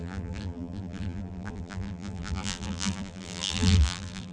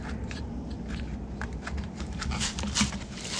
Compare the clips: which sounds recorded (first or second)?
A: second